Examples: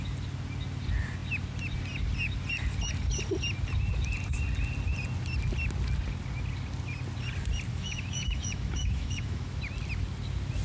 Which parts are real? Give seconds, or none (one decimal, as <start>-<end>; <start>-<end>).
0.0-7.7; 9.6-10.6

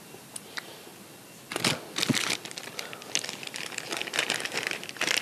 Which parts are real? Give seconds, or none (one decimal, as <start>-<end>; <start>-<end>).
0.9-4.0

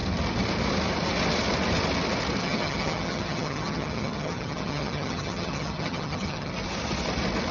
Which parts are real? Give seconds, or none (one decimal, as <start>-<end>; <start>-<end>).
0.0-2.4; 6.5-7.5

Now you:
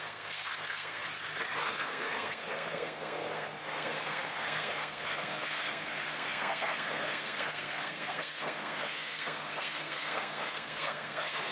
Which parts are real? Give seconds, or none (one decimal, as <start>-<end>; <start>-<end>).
1.0-1.6

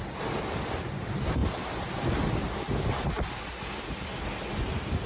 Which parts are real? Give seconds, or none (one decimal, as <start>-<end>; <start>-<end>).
0.0-5.1

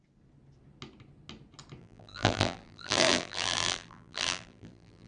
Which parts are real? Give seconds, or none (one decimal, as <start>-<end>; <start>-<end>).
0.0-1.8

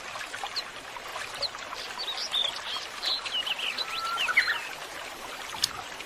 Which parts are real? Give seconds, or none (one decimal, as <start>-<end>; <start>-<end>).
0.0-6.1

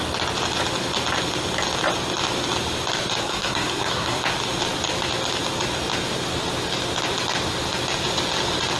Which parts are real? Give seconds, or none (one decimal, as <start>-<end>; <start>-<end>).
0.0-3.2; 4.2-8.8